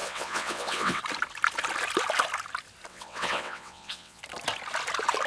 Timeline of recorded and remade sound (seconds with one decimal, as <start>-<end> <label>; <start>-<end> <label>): 0.0-1.0 remade; 1.0-2.9 recorded; 2.9-4.2 remade; 4.2-5.3 recorded